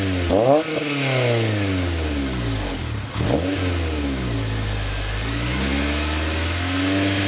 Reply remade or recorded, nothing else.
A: recorded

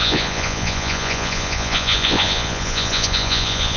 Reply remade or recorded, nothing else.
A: remade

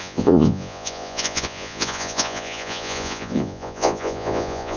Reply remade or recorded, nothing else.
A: remade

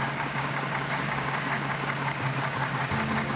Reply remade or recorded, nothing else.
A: remade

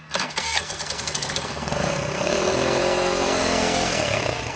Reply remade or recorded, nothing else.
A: remade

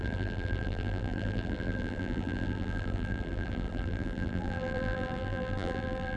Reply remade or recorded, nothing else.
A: remade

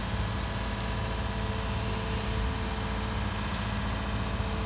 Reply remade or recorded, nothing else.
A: recorded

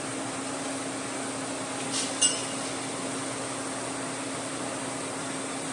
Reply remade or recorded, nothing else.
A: recorded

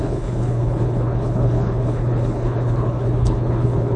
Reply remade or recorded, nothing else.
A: remade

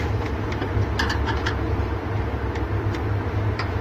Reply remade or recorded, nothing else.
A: recorded